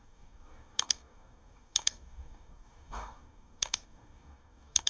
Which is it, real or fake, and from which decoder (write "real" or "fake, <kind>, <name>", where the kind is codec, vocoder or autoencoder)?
fake, codec, DAC